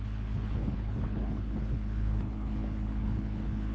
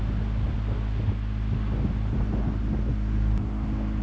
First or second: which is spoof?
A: first